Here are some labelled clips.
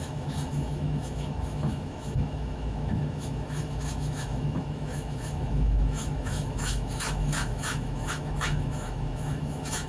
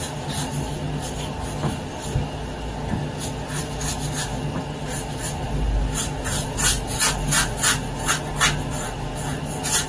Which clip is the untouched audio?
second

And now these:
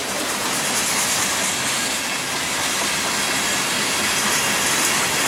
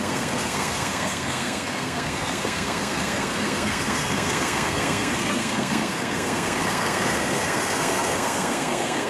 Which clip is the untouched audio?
first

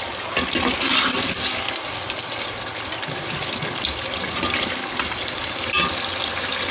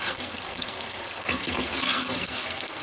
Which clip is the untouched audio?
first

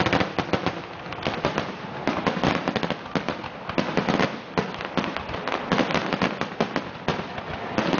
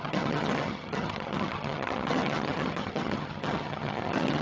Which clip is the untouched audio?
first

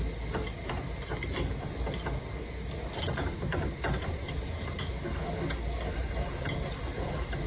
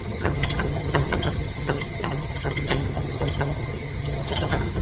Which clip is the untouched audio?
first